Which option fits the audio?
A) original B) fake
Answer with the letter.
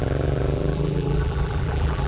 B